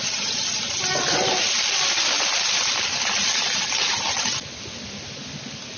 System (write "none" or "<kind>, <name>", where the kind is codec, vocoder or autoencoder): none